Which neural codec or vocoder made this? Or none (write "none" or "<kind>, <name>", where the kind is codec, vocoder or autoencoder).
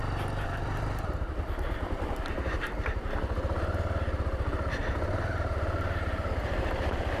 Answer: vocoder, BigVGAN v2